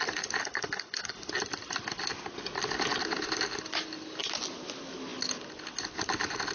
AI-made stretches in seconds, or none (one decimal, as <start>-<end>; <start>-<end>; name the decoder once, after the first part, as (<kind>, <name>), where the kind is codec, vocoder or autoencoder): 0.4-1.3 (codec, HILCodec)